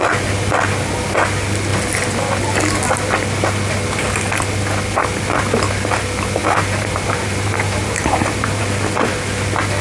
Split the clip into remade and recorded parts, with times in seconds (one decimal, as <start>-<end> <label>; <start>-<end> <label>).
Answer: 0.0-6.4 recorded; 6.4-8.6 remade; 8.6-9.8 recorded